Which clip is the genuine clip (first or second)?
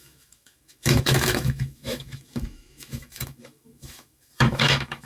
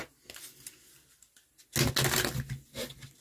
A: second